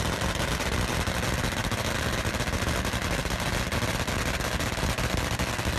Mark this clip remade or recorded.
recorded